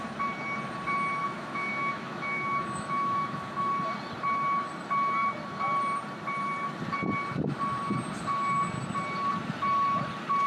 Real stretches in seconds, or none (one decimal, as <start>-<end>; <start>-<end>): 0.0-1.2; 3.7-10.5